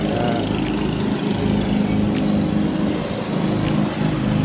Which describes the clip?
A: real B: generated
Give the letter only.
A